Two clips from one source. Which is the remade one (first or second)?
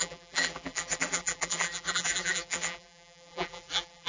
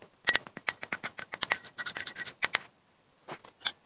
first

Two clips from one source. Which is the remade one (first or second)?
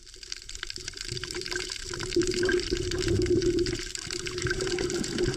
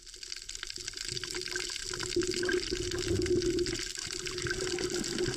first